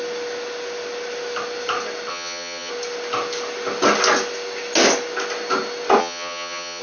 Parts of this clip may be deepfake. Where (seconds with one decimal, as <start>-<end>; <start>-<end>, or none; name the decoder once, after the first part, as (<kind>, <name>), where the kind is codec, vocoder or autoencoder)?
2.1-2.7 (vocoder, HiFi-GAN); 6.0-6.8